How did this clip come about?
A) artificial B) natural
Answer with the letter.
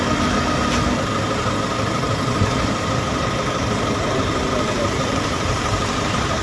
A